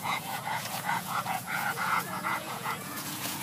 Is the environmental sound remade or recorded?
remade